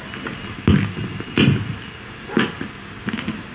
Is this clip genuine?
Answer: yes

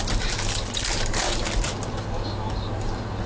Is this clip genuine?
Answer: yes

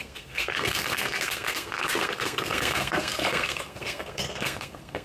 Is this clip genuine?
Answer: no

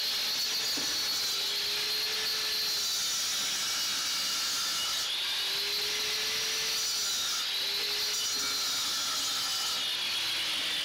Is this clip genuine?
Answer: yes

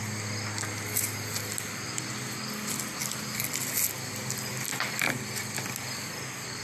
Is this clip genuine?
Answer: yes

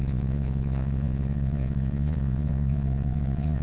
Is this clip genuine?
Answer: no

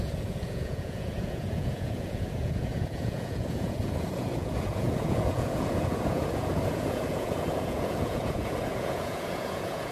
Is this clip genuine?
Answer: no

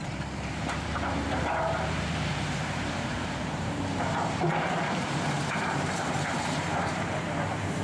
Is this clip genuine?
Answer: no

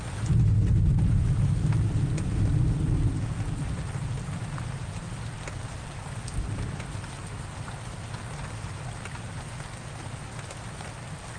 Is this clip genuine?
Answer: yes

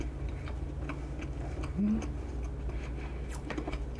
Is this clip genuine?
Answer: yes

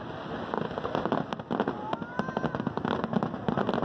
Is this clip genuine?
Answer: yes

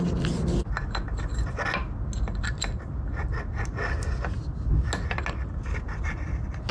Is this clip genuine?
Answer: yes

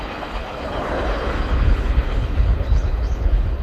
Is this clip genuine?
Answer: no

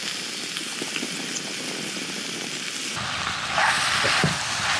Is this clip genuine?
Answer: yes